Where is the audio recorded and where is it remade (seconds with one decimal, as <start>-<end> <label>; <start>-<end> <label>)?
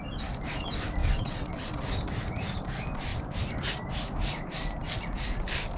0.0-1.0 recorded; 1.0-1.8 remade; 1.8-5.8 recorded